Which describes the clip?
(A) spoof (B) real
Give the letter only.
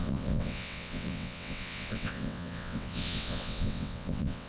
A